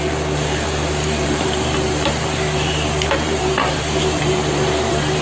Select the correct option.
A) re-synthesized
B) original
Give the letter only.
A